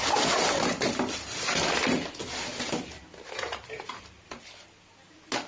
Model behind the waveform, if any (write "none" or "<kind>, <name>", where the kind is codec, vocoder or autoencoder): none